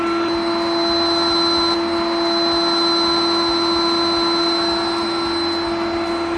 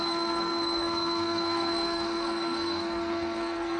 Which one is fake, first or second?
second